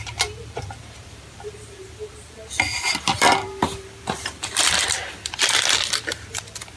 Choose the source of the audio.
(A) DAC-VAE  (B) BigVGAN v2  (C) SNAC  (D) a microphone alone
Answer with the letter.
B